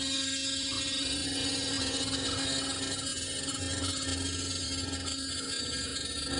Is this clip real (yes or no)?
yes